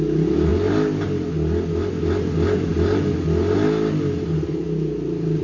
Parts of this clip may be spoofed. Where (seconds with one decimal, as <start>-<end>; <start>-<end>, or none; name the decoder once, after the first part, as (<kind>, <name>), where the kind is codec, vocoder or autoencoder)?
none